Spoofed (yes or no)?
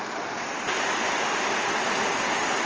no